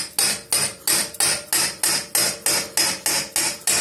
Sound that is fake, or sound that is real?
real